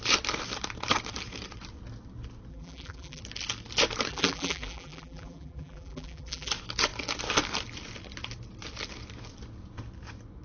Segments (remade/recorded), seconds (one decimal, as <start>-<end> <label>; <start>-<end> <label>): 0.0-2.5 recorded; 2.5-3.2 remade; 3.2-4.1 recorded; 4.1-6.5 remade; 6.5-10.4 recorded